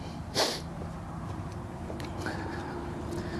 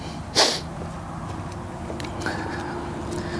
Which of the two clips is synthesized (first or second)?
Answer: first